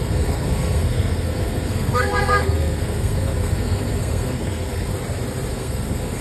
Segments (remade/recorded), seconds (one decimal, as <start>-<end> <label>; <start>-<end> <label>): 0.0-4.9 remade; 4.9-5.5 recorded; 5.5-6.2 remade